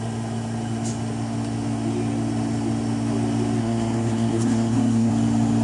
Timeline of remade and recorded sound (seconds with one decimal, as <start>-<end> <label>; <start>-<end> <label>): 0.0-3.6 recorded; 3.6-5.1 remade; 5.1-5.6 recorded